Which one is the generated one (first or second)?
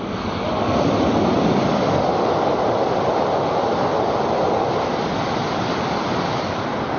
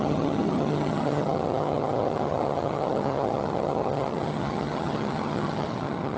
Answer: second